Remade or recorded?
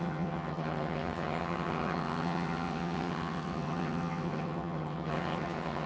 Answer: remade